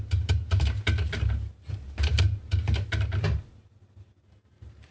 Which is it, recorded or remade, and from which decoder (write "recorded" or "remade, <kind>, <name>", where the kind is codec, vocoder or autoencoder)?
recorded